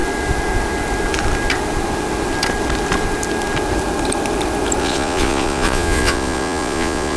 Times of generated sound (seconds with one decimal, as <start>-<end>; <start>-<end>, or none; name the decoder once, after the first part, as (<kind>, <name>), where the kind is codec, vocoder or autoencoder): 4.8-7.2 (vocoder, Vocos)